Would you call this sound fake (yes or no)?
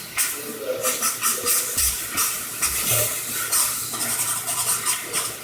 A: no